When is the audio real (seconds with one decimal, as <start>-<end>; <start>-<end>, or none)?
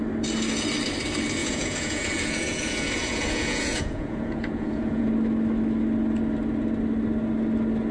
0.0-1.4; 5.1-7.9